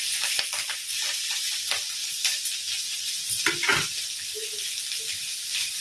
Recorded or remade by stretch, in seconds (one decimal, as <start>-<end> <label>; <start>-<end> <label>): 0.0-2.0 remade; 2.0-5.1 recorded; 5.1-5.8 remade